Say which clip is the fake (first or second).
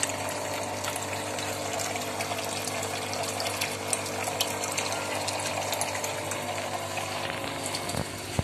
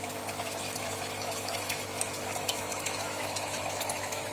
second